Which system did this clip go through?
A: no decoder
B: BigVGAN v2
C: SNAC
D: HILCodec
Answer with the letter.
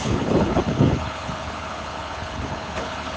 D